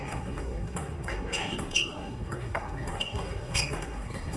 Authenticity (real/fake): fake